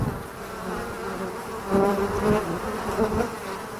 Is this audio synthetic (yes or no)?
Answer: no